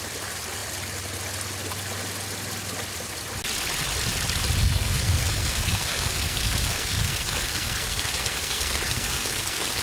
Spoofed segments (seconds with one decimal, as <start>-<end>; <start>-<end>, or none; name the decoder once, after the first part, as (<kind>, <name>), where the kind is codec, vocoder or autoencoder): 4.6-9.8 (codec, SNAC)